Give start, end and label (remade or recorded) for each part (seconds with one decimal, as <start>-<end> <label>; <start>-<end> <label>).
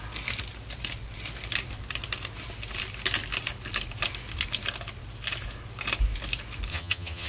0.0-6.7 recorded; 6.7-7.3 remade